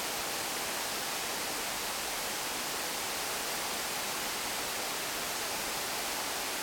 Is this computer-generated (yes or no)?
no